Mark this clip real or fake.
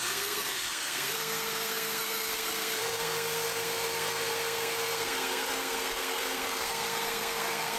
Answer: fake